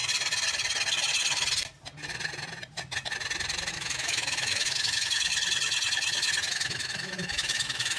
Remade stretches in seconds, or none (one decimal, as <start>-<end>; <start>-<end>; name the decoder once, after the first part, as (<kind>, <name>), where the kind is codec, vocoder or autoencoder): 3.7-5.3 (autoencoder, DAC-VAE); 6.5-8.0

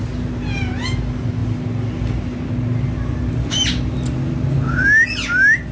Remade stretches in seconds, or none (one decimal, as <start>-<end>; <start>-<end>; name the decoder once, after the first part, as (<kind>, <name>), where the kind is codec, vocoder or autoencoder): none

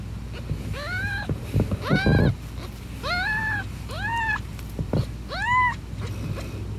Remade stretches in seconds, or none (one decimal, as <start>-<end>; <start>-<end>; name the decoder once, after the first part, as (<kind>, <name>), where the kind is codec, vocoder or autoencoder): none

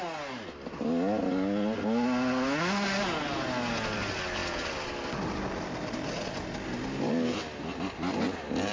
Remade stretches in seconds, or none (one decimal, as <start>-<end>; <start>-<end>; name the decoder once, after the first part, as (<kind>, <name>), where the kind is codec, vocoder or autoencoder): none

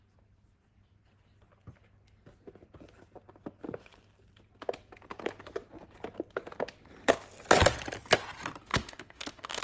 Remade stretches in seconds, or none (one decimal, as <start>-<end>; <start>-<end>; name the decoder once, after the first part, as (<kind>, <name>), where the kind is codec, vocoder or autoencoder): 8.7-9.6 (autoencoder, DAC-VAE)

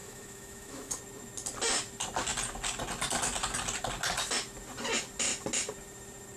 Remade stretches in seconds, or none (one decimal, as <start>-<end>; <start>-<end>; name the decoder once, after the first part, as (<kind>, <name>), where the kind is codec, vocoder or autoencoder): 0.0-1.0 (autoencoder, DAC-VAE)

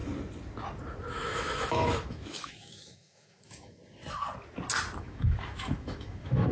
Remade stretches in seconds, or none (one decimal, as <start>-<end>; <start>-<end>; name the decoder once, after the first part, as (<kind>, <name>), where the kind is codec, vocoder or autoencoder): 1.1-3.8 (autoencoder, DAC-VAE); 5.0-6.5